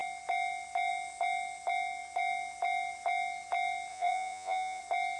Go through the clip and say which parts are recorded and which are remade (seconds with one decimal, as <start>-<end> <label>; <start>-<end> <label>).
0.0-3.9 recorded; 3.9-4.8 remade; 4.8-5.2 recorded